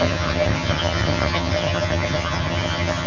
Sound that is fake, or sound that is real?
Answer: fake